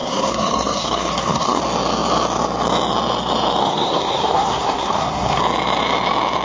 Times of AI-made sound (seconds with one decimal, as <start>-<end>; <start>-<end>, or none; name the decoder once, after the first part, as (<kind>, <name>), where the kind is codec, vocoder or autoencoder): 0.0-1.6 (codec, SNAC); 3.6-5.4